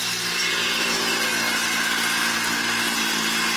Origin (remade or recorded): recorded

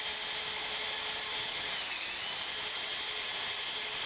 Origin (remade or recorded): recorded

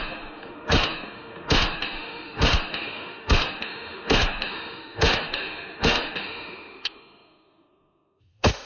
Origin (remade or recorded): remade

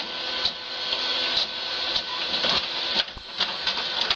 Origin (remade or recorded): recorded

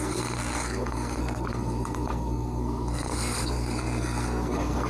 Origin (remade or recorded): remade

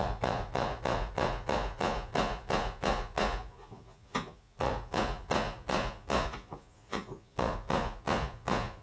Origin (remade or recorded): remade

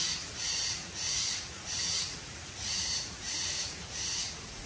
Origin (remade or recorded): remade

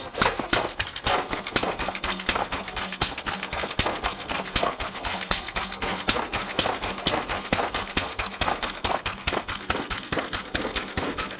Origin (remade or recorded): remade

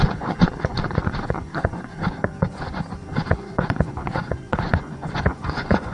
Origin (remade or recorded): remade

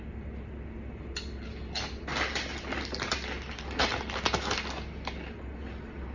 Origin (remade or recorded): recorded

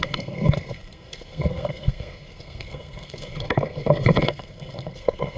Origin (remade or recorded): remade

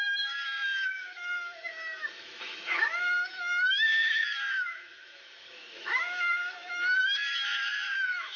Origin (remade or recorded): remade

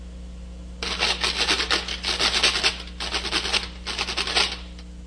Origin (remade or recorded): recorded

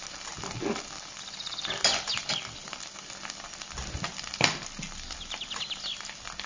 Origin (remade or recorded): recorded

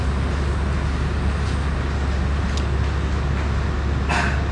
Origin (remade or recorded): recorded